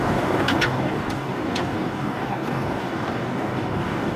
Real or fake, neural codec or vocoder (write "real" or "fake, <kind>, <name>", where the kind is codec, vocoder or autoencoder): fake, codec, DAC